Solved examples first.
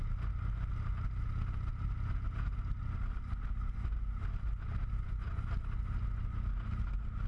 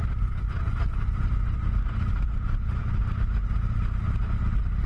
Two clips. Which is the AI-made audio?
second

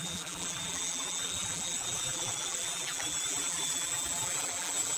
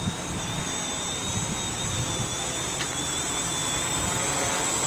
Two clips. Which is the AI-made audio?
first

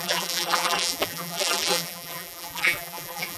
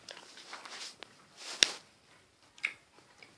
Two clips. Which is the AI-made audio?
first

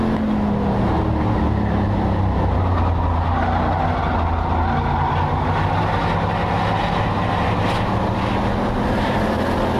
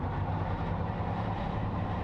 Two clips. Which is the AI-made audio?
second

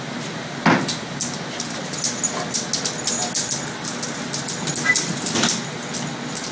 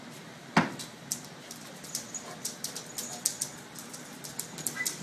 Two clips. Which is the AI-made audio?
second